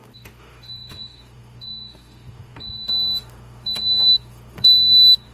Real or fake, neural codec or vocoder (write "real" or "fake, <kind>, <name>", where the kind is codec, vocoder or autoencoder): fake, autoencoder, DAC-VAE